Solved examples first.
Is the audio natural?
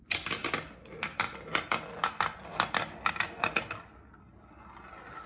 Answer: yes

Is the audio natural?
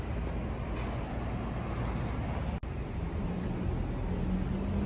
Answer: yes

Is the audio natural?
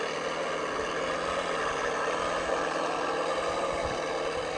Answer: yes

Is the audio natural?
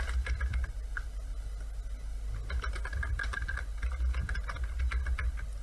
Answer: yes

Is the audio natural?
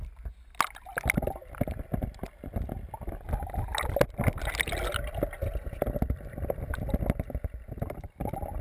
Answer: yes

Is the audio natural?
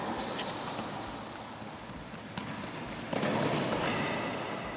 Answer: yes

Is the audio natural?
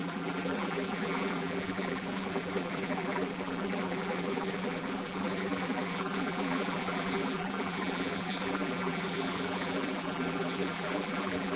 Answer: no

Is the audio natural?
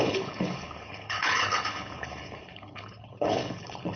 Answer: no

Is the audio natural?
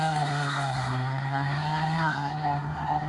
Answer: no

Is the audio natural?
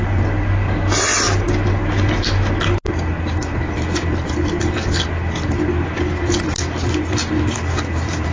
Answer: yes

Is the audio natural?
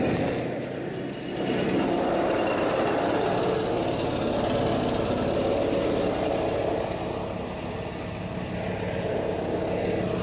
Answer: yes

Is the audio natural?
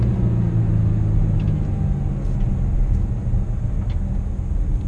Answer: yes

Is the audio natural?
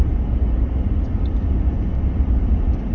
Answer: yes